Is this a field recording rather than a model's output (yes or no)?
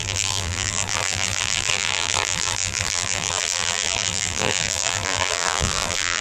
no